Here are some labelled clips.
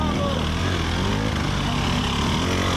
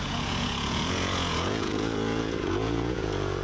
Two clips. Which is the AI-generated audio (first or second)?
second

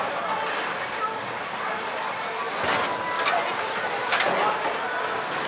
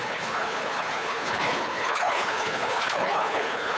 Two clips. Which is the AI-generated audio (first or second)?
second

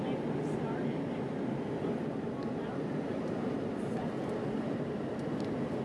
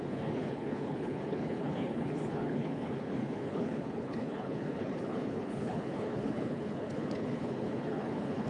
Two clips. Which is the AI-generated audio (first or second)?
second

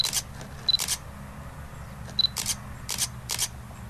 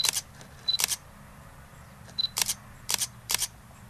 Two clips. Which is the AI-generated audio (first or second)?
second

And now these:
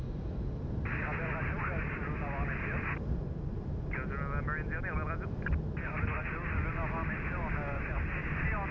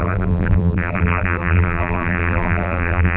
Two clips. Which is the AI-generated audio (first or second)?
second